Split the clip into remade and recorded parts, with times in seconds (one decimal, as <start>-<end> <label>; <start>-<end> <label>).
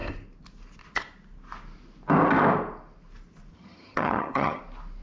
0.0-3.5 recorded; 3.5-4.6 remade; 4.6-5.0 recorded